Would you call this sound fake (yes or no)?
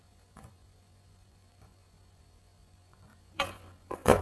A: yes